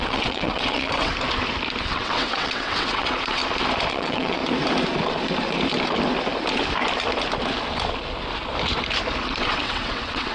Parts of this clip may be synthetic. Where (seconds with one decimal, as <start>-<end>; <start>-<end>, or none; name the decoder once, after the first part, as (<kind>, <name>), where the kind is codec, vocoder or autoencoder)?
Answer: 0.0-1.1 (vocoder, WaveNeXt); 1.8-3.4; 3.9-4.4; 9.4-10.3